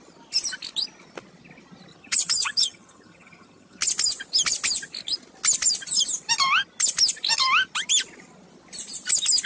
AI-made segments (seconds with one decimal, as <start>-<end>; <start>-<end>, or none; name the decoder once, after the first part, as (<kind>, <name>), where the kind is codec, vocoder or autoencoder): 1.9-3.8 (vocoder, HiFi-GAN)